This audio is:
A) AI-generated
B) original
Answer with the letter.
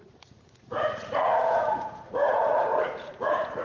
A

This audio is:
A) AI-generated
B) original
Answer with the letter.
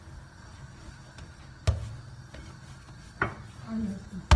B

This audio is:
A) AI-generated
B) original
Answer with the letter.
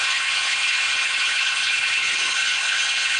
A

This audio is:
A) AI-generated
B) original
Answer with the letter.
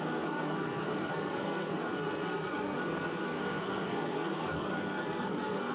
A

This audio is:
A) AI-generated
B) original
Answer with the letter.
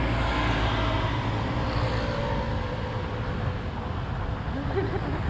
B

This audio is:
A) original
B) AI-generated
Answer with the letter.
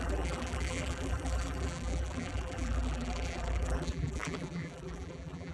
B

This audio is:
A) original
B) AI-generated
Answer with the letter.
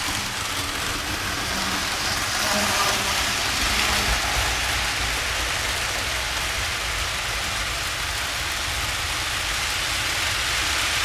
A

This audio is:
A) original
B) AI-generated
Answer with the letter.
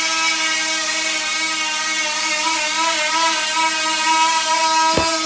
A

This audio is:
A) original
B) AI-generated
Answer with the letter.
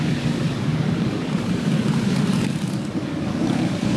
B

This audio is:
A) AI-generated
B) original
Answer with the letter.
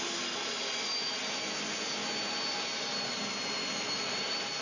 B